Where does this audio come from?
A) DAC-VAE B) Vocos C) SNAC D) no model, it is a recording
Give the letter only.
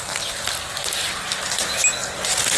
D